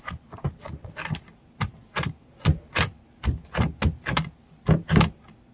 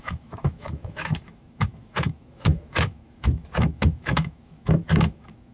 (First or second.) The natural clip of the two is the first